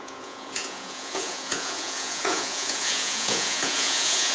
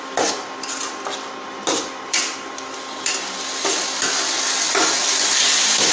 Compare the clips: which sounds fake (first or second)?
first